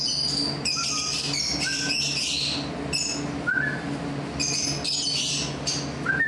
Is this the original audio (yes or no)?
yes